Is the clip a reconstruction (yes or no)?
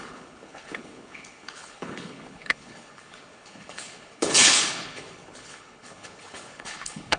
yes